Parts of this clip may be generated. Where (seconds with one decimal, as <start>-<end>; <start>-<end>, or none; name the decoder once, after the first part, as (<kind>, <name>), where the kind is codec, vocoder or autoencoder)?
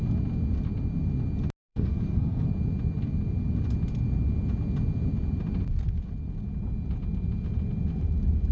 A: 1.7-2.5 (codec, SNAC)